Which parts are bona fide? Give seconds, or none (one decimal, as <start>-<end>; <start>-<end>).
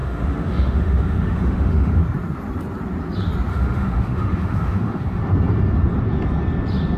1.9-3.5; 5.2-7.0